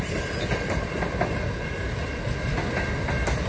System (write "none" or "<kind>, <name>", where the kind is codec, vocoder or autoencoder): none